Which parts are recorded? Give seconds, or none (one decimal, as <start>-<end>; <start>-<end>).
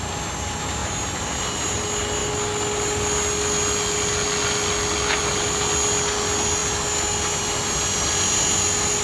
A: 0.0-9.0